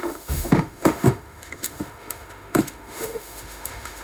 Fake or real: fake